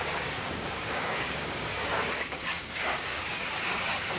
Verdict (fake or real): fake